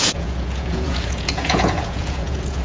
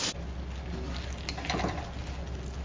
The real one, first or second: second